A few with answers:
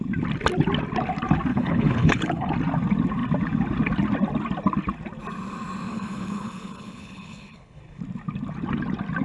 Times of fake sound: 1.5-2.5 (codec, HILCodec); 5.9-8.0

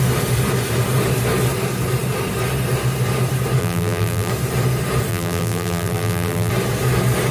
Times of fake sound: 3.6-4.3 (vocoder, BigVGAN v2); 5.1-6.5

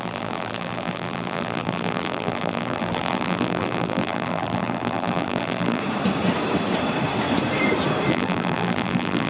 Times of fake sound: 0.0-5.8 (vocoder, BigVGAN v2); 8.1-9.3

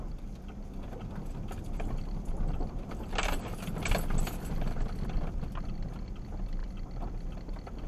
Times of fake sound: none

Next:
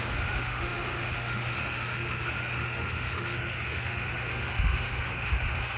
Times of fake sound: 0.0-5.8 (autoencoder, DAC-VAE)

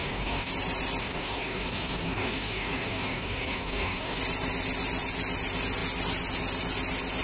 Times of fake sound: 0.0-0.5 (codec, DAC); 1.0-4.2

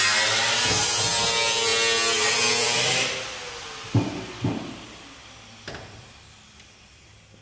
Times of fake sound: none

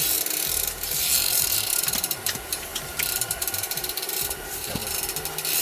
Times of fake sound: 0.0-4.8 (vocoder, BigVGAN v2)